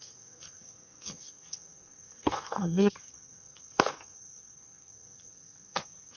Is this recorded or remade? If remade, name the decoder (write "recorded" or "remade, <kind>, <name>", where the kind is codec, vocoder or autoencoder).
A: remade, codec, SNAC